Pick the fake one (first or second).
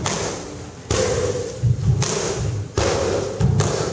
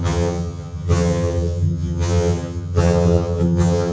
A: second